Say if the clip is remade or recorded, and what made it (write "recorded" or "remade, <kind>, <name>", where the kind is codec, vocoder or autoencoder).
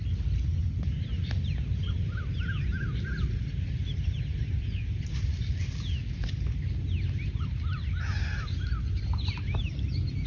recorded